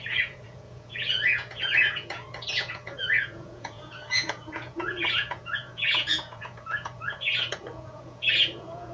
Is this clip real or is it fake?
fake